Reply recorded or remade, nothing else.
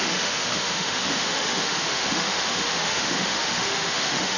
remade